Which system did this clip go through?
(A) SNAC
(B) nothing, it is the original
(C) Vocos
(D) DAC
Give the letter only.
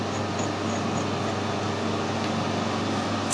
B